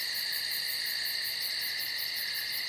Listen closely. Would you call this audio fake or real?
real